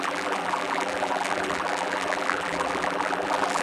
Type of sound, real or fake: fake